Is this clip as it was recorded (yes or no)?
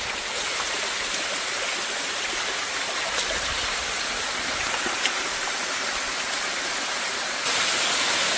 yes